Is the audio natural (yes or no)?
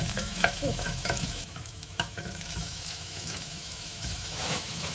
no